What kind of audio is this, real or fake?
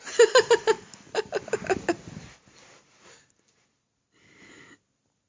real